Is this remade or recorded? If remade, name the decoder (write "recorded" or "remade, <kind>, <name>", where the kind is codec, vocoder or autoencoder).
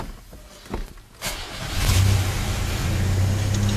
recorded